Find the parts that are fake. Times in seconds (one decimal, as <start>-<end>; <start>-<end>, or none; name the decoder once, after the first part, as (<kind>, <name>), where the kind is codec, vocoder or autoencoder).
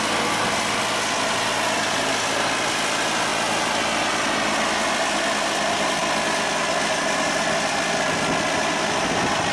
none